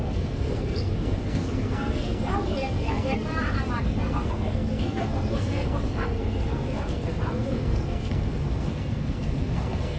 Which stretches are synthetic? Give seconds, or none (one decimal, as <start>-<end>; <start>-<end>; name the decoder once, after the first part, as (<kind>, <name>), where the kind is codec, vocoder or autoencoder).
0.0-3.3 (codec, SNAC); 3.8-10.0